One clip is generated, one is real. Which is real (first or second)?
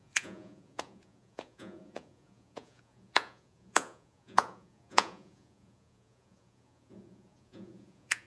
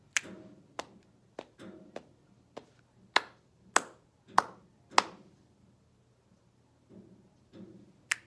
second